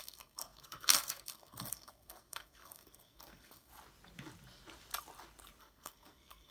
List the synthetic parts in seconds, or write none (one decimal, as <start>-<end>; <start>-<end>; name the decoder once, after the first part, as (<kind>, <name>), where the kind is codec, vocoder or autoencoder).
0.0-3.7 (codec, SNAC); 5.6-6.5